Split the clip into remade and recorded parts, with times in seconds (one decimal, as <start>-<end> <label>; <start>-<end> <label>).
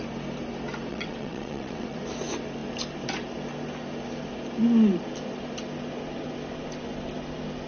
0.0-0.9 recorded; 0.9-2.0 remade; 2.0-7.7 recorded